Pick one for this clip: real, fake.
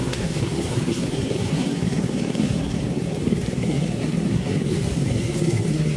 fake